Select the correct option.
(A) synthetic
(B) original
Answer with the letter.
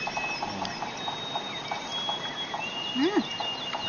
B